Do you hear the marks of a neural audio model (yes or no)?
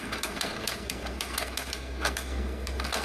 yes